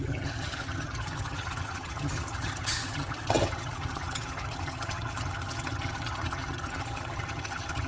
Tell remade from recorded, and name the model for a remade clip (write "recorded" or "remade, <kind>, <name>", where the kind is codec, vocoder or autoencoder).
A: remade, vocoder, HiFi-GAN